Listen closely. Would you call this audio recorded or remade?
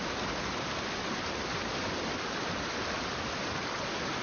recorded